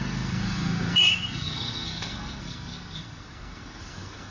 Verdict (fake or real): fake